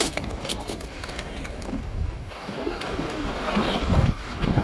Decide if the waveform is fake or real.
fake